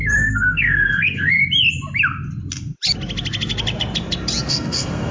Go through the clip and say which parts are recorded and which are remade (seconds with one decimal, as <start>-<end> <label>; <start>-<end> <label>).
0.0-1.4 remade; 1.4-4.5 recorded; 4.5-5.1 remade